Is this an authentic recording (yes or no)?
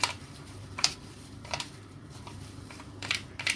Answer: no